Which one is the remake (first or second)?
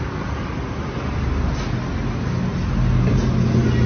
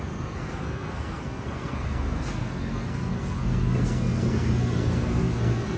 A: second